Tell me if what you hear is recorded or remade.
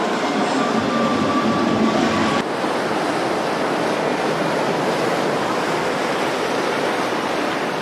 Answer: recorded